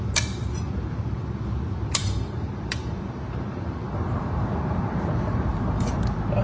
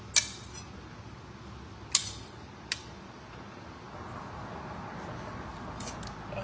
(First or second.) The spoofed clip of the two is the first